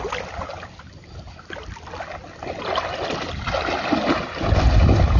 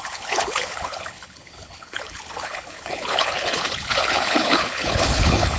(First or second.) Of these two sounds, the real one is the first